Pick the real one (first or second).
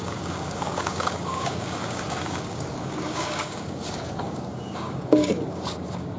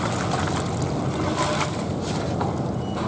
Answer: second